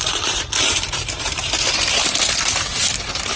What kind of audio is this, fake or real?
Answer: fake